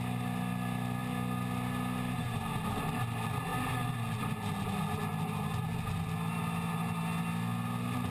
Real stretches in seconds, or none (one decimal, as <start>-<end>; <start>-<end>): 0.0-8.1